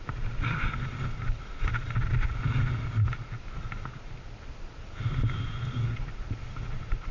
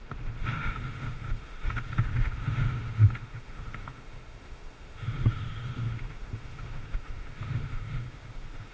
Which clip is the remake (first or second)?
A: second